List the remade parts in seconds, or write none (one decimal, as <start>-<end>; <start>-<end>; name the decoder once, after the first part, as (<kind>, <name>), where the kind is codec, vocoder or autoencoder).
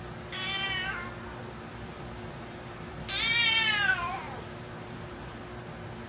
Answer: 1.7-5.4 (vocoder, BigVGAN v2)